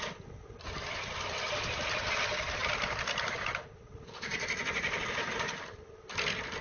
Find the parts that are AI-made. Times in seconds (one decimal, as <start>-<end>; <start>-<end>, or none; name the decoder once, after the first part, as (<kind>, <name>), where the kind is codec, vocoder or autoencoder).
none